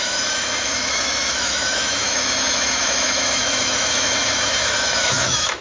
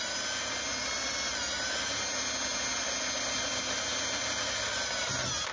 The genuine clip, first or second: second